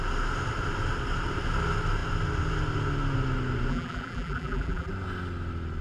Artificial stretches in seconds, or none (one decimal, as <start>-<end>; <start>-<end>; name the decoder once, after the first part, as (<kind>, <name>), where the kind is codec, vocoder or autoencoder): 3.7-4.9 (vocoder, BigVGAN v2)